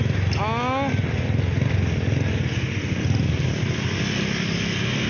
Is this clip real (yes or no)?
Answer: yes